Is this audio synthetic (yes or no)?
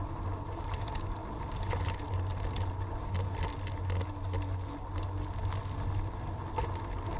no